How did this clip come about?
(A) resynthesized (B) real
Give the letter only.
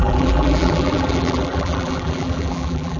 A